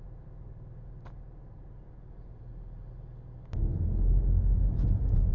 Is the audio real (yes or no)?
yes